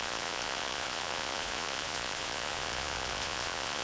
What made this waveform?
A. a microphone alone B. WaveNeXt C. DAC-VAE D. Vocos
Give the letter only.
D